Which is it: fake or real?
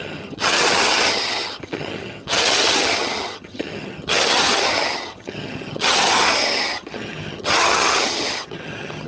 fake